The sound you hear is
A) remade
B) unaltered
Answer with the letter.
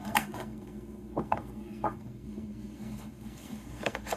A